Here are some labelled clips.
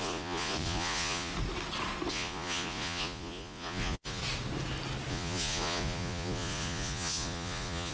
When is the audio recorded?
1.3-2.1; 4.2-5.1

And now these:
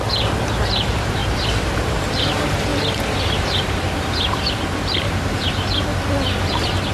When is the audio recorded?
2.7-3.4; 5.9-6.9

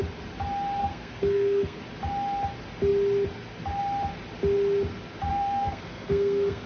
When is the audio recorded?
0.0-0.8; 1.8-5.3